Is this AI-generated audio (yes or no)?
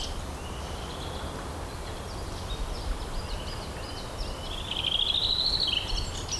no